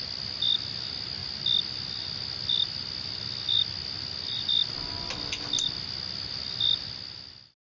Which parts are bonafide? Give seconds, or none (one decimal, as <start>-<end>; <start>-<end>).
0.0-7.6